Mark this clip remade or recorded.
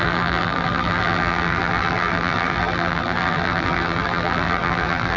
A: remade